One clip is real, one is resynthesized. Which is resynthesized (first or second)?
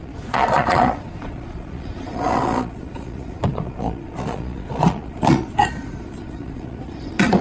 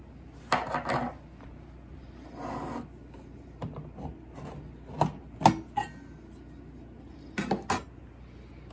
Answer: first